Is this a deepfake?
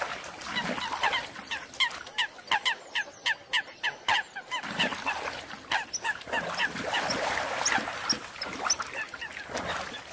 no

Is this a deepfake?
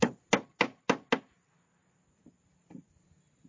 no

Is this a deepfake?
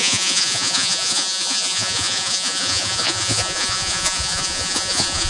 yes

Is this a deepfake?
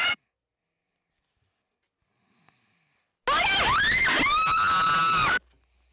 no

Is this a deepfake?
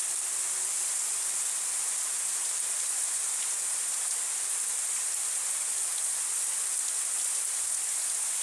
no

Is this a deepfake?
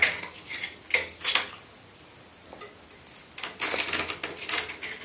no